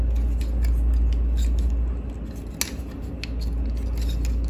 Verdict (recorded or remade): recorded